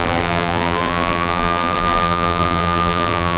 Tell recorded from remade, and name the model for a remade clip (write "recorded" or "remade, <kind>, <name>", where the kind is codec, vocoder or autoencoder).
remade, vocoder, BigVGAN v2